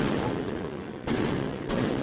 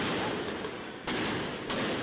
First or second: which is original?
second